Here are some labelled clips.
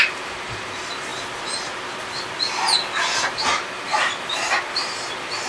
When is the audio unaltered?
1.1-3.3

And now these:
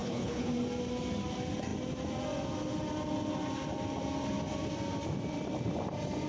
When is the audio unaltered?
0.5-6.3

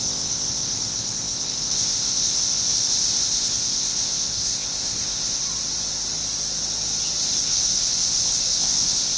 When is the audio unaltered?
5.4-7.2

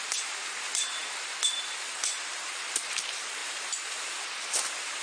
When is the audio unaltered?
0.0-5.0

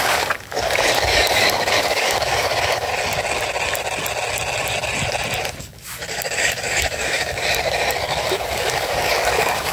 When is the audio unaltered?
2.9-5.6

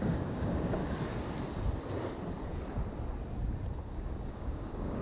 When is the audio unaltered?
0.8-3.8